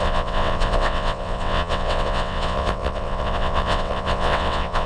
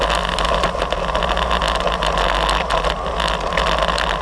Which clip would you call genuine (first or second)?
second